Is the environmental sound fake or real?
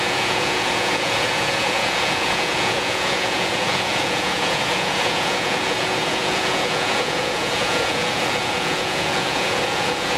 fake